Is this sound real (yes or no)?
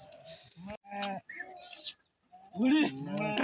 yes